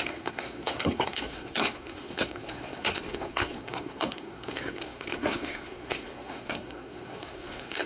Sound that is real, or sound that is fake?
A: fake